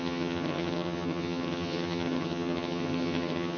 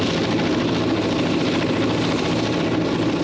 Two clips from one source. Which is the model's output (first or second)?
first